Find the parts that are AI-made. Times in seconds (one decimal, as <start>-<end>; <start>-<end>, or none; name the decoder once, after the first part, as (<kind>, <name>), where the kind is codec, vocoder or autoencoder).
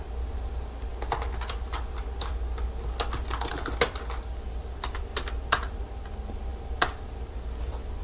none